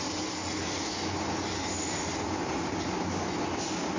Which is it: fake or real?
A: real